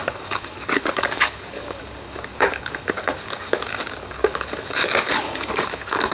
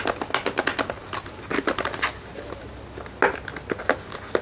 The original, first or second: second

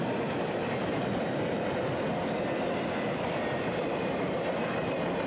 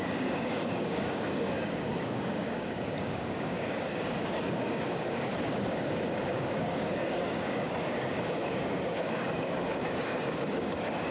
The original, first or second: first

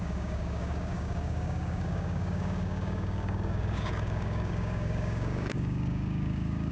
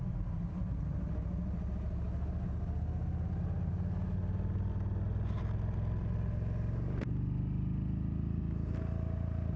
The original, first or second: second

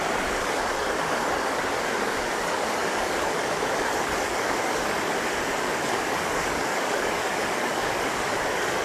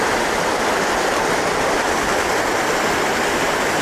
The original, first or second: second